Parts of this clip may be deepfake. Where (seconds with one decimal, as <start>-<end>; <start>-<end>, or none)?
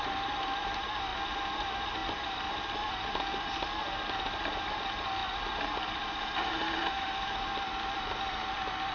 none